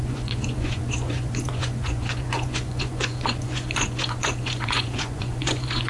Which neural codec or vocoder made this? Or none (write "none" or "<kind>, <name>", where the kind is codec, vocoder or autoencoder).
vocoder, Vocos